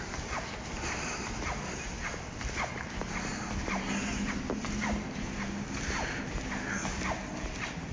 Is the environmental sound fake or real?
real